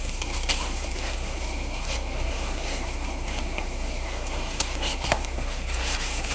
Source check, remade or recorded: remade